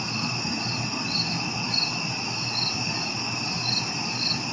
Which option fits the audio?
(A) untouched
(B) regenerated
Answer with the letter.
A